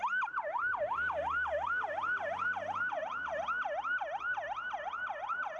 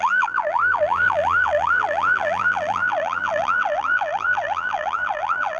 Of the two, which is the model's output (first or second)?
second